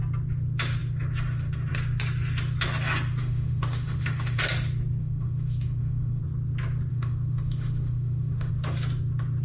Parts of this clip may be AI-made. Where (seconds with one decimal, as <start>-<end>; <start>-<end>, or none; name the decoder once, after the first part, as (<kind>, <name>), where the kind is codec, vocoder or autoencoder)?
3.2-4.4 (autoencoder, DAC-VAE); 5.0-6.2; 6.9-8.5